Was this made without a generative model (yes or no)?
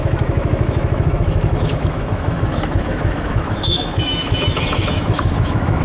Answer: no